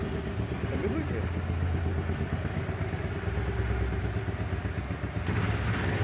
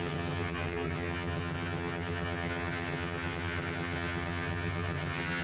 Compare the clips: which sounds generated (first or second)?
second